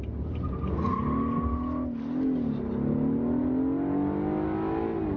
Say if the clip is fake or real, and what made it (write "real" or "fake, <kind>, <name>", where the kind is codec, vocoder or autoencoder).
real